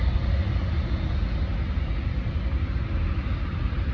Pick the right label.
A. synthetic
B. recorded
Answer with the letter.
B